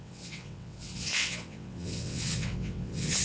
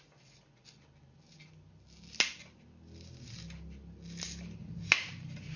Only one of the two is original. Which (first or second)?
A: second